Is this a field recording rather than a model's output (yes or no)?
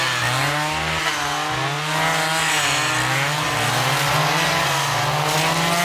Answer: yes